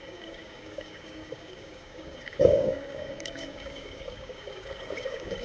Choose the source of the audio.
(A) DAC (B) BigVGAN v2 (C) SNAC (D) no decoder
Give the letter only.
A